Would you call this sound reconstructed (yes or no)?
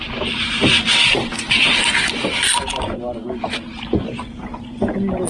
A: no